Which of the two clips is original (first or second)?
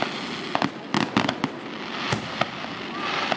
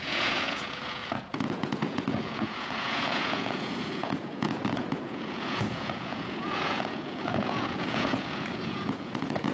first